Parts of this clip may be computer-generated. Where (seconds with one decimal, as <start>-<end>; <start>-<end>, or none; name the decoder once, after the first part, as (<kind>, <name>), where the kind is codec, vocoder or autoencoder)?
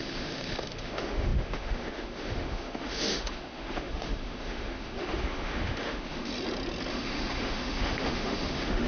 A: 0.0-6.3 (autoencoder, DAC-VAE); 6.9-8.9